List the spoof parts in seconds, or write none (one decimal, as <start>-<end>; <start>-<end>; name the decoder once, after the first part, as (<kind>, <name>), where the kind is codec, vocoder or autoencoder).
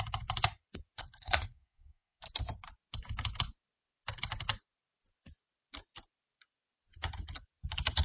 1.0-2.2 (codec, SNAC)